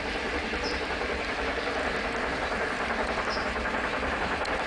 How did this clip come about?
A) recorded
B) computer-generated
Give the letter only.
A